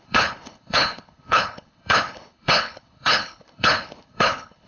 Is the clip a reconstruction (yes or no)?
yes